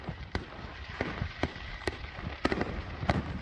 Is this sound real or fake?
fake